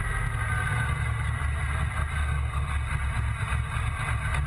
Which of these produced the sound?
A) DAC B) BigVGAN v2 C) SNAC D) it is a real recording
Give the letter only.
D